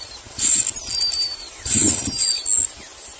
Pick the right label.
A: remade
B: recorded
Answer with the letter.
B